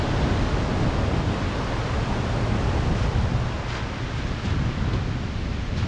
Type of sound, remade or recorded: recorded